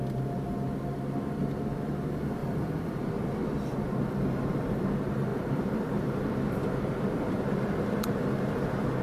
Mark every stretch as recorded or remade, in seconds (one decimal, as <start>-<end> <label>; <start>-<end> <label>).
0.0-2.4 recorded; 2.4-3.0 remade; 3.0-5.3 recorded; 5.3-6.3 remade; 6.3-9.0 recorded